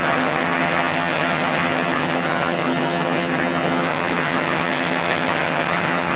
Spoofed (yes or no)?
yes